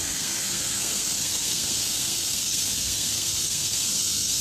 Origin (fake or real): fake